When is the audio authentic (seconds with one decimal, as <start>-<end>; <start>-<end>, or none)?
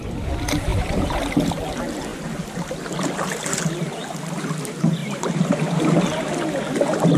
0.0-0.7; 1.2-5.0; 6.0-7.2